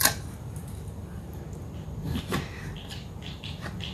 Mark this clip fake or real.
real